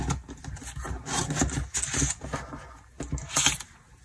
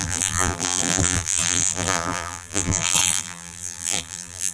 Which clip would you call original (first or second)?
first